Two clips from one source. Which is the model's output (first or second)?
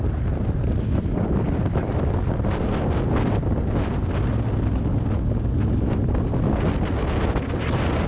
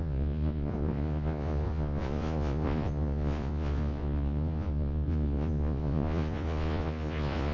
second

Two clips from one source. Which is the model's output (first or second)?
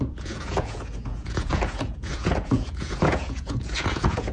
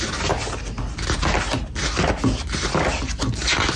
first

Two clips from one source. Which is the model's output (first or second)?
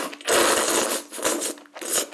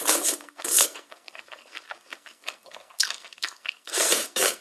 second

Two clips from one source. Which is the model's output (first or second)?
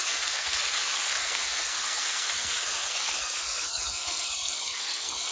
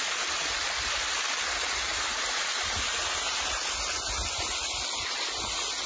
first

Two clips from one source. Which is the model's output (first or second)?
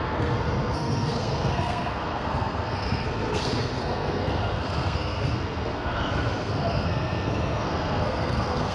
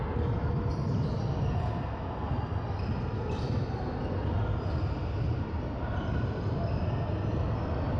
first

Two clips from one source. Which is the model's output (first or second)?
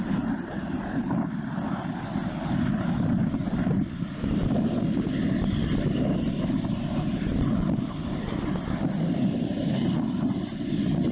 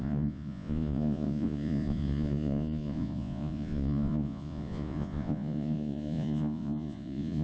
second